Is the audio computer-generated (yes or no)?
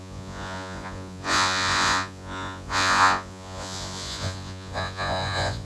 yes